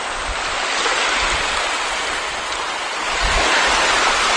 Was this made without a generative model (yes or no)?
yes